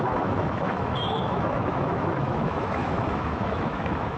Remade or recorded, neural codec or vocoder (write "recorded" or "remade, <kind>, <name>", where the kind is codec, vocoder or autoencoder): remade, autoencoder, DAC-VAE